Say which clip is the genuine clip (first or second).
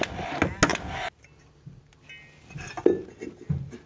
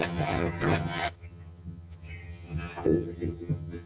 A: first